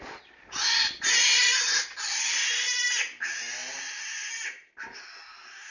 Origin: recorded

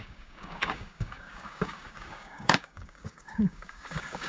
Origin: remade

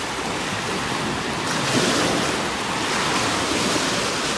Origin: recorded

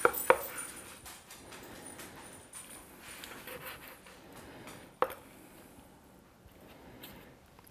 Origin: recorded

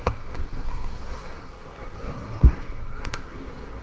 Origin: remade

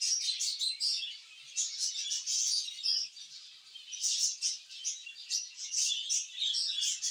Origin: recorded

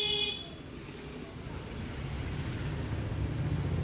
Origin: recorded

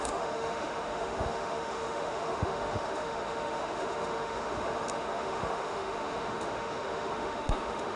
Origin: remade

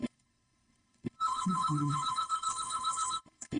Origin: remade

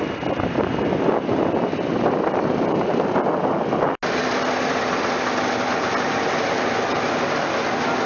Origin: recorded